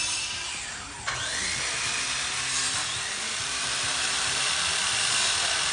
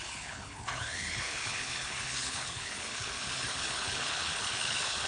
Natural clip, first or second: first